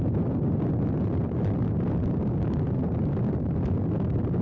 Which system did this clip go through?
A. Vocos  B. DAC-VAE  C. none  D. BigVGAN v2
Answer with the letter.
C